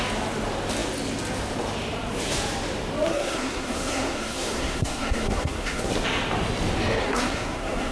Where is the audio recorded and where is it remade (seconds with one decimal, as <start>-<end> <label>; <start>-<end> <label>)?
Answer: 0.0-3.1 recorded; 3.1-5.9 remade; 5.9-7.0 recorded; 7.0-7.9 remade